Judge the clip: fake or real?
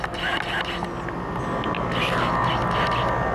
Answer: real